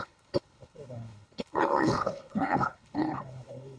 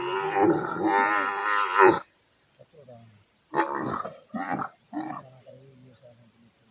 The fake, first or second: first